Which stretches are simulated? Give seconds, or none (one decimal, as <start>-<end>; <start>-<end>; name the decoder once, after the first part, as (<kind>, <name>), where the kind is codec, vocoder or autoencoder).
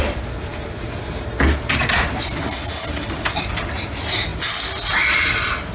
none